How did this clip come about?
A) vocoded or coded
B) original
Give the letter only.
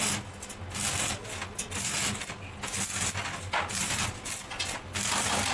B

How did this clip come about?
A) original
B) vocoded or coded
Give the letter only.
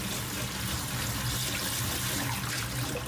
A